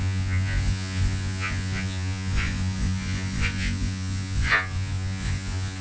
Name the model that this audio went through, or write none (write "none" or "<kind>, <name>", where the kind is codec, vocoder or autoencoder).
vocoder, Vocos